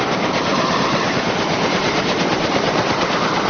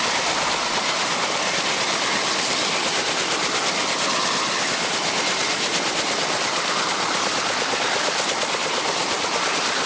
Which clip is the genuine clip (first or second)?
second